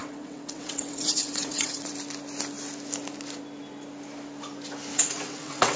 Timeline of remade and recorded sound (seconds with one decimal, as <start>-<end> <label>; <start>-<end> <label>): 0.0-1.9 remade; 1.9-4.9 recorded; 4.9-5.8 remade